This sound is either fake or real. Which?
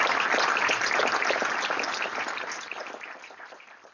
real